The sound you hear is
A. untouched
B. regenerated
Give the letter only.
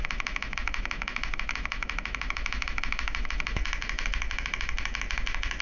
B